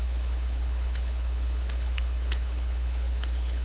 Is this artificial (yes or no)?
yes